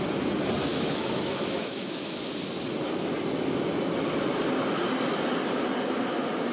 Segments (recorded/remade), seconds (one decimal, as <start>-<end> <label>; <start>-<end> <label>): 0.0-0.7 recorded; 0.7-2.3 remade; 2.3-6.5 recorded